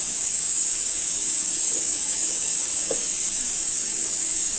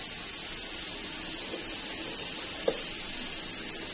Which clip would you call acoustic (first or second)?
second